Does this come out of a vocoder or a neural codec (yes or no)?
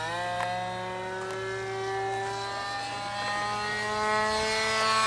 no